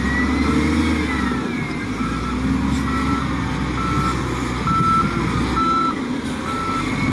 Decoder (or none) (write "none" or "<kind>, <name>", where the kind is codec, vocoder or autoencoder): none